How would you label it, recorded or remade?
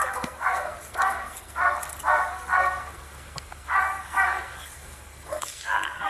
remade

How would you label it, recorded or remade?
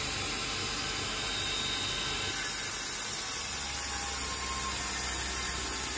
recorded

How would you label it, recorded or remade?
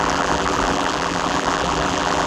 remade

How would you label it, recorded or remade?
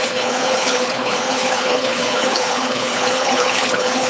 remade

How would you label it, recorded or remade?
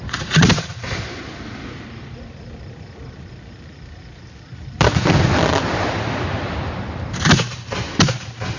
recorded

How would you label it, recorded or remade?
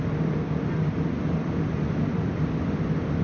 recorded